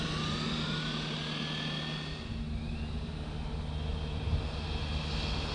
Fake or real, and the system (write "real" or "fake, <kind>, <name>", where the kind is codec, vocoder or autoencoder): real